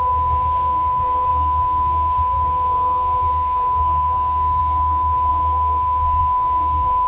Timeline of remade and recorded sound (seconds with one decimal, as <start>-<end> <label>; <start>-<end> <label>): 0.0-7.1 remade